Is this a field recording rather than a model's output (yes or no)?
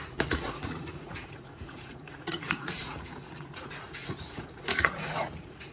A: no